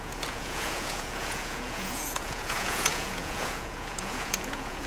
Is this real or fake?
fake